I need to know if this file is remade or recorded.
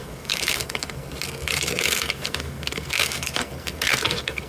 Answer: remade